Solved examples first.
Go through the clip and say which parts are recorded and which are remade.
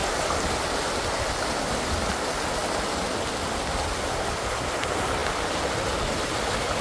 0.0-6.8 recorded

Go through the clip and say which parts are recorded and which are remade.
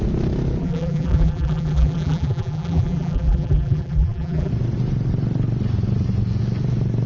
0.0-0.6 recorded; 0.6-4.5 remade; 4.5-7.1 recorded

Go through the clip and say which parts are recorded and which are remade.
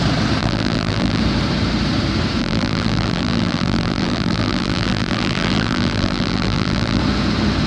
0.0-0.4 recorded; 0.4-1.2 remade; 1.2-2.4 recorded; 2.4-7.0 remade; 7.0-7.7 recorded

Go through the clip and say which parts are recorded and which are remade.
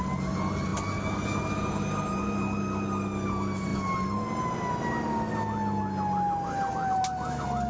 0.0-7.7 recorded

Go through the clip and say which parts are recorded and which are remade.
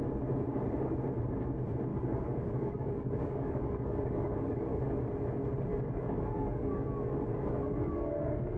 0.0-1.9 recorded; 1.9-5.0 remade; 5.0-5.7 recorded; 5.7-8.6 remade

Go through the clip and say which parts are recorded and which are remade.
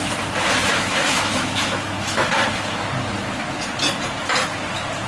0.0-0.7 recorded; 0.7-2.3 remade; 2.3-5.1 recorded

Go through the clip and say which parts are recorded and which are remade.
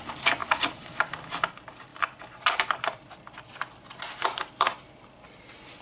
0.0-5.8 recorded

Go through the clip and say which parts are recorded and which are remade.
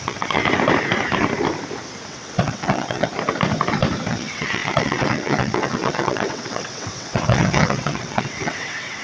0.0-0.4 remade; 0.4-2.1 recorded; 2.1-3.1 remade; 3.1-4.1 recorded; 4.1-9.0 remade